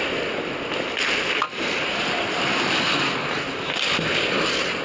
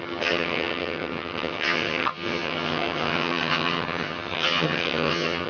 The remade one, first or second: second